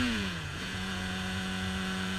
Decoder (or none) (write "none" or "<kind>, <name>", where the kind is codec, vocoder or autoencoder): vocoder, Vocos